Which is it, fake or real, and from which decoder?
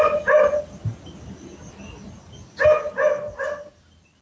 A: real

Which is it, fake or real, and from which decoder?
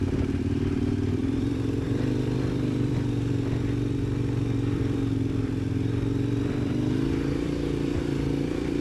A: fake, vocoder, BigVGAN v2